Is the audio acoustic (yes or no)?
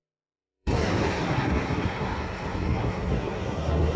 no